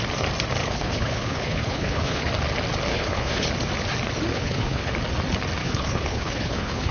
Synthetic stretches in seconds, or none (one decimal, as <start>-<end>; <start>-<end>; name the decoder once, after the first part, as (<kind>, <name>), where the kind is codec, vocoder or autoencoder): 0.6-2.3 (codec, HILCodec); 2.9-3.5; 4.3-4.9; 5.6-6.9